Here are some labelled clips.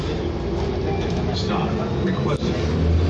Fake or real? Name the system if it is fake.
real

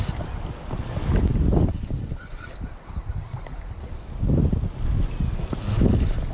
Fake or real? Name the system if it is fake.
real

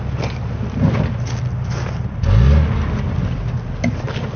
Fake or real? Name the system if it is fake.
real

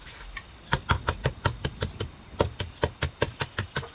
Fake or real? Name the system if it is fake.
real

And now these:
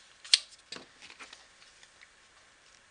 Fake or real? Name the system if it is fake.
real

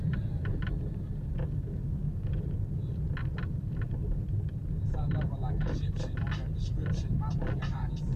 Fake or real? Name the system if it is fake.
real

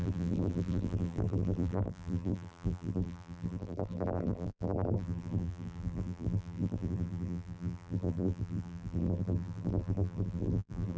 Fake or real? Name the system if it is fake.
fake, vocoder, BigVGAN v2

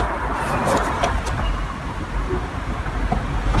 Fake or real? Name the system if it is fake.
real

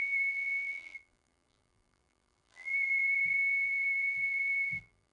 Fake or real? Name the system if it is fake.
fake, vocoder, BigVGAN v2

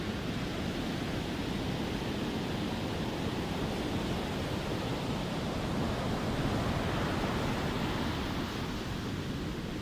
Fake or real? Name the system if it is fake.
real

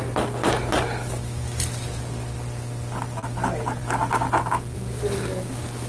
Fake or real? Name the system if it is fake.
real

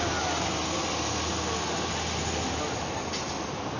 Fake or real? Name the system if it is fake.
real